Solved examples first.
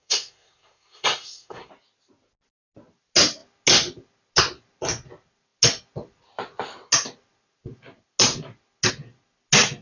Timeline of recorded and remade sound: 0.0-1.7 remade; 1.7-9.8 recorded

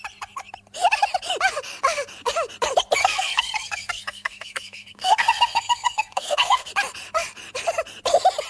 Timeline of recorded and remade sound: 0.0-3.0 recorded; 3.0-6.7 remade; 6.7-8.5 recorded

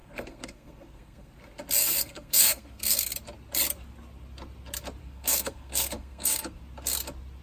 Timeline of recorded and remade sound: 0.0-1.3 remade; 1.3-1.8 recorded; 1.8-3.1 remade; 3.1-5.0 recorded; 5.0-6.6 remade; 6.6-7.4 recorded

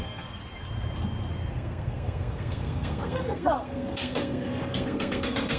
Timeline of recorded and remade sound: 0.0-0.4 remade; 0.4-1.5 recorded; 1.5-5.6 remade

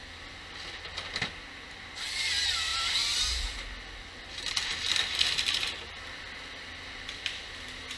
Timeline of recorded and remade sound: 0.0-8.0 recorded

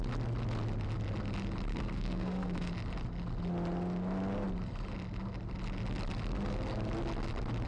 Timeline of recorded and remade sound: 0.0-1.7 recorded; 1.7-2.7 remade; 2.7-7.7 recorded

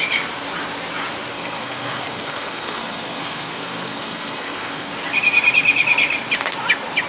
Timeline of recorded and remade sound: 0.0-1.3 recorded; 1.3-4.9 remade; 4.9-7.1 recorded

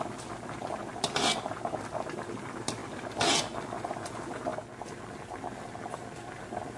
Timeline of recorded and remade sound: 0.0-6.8 recorded